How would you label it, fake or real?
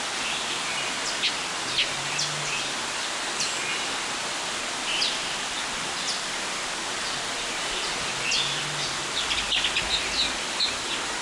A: real